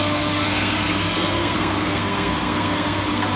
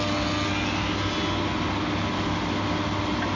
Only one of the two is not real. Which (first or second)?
first